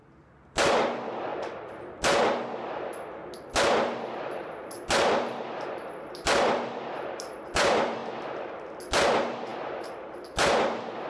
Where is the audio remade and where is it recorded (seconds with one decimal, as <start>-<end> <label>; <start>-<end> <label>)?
0.0-1.3 remade; 1.3-4.0 recorded; 4.0-11.1 remade